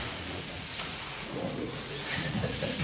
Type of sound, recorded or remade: remade